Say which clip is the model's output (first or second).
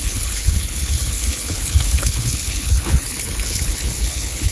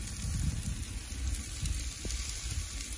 first